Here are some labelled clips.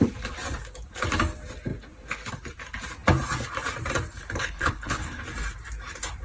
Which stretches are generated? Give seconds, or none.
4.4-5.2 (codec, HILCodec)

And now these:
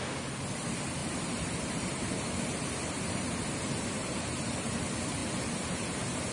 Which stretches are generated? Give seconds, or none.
1.0-4.8 (vocoder, BigVGAN v2); 5.2-6.3